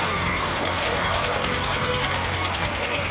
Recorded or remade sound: remade